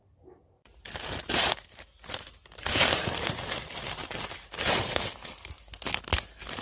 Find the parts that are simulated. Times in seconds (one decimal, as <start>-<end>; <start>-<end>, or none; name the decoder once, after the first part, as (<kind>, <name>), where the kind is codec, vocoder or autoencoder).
4.0-4.7 (vocoder, BigVGAN v2)